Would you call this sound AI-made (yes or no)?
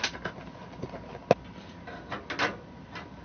no